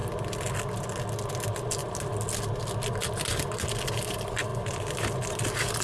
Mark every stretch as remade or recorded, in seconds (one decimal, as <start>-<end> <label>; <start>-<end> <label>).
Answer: 0.0-0.6 remade; 0.6-4.5 recorded; 4.5-5.8 remade